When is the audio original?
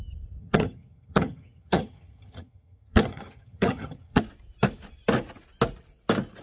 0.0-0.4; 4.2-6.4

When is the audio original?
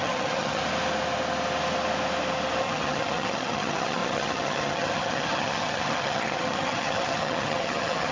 0.6-2.6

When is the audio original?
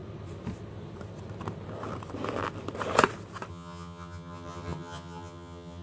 0.0-3.5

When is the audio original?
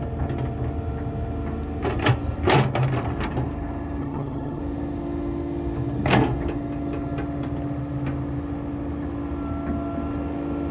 0.0-4.0; 4.6-10.7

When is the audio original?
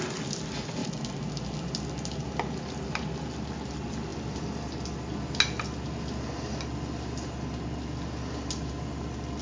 0.0-9.4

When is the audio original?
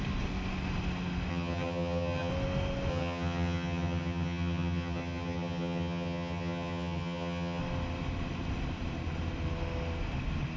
0.0-1.3; 2.3-2.9; 7.6-10.6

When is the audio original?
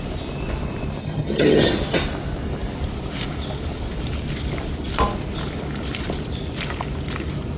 0.0-1.0; 1.7-7.6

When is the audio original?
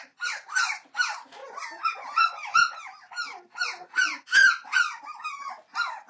0.0-6.1